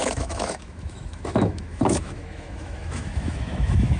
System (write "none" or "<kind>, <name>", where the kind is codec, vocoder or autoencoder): autoencoder, DAC-VAE